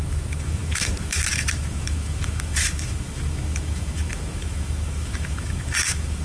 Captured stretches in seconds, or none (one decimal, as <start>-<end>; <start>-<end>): none